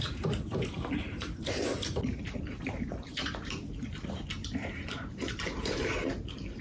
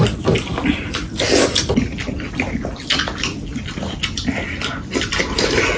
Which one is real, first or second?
second